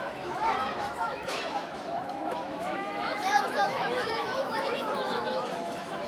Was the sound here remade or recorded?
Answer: remade